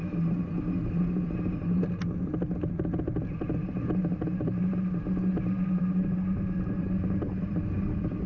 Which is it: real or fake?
real